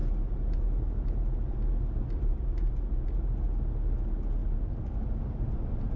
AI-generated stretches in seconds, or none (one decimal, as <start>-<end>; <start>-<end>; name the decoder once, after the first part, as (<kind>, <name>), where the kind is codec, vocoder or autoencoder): none